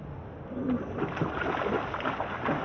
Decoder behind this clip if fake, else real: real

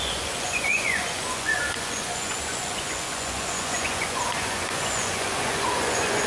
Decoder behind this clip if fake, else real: fake, vocoder, Vocos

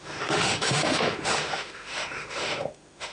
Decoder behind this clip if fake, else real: fake, autoencoder, DAC-VAE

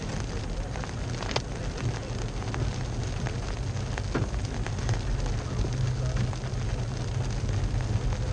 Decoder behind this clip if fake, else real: real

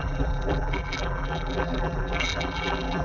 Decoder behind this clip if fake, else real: fake, vocoder, BigVGAN v2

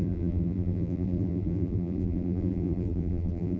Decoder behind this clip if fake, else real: fake, vocoder, BigVGAN v2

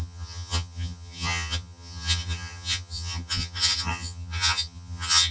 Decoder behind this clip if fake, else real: fake, vocoder, HiFi-GAN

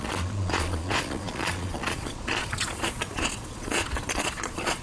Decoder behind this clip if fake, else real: fake, vocoder, Vocos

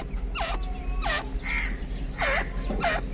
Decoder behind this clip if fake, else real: real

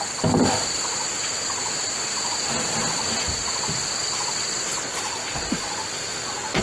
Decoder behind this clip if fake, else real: real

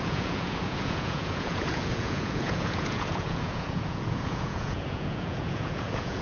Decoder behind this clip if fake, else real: fake, vocoder, Vocos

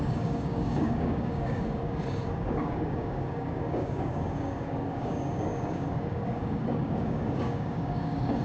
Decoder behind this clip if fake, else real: fake, codec, DAC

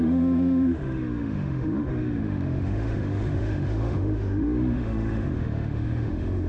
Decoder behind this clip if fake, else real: fake, autoencoder, DAC-VAE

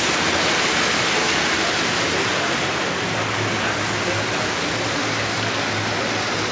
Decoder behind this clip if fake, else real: real